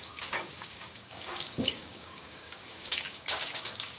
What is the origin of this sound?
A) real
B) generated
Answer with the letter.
B